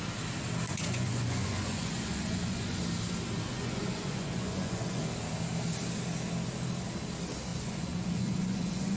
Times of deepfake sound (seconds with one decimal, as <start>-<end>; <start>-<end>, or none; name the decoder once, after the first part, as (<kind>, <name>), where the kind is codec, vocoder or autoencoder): 0.7-2.8 (vocoder, Vocos); 3.5-5.0; 7.5-9.0